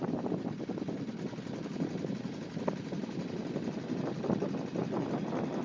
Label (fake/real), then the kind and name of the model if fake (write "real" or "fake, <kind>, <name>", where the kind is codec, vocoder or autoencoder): real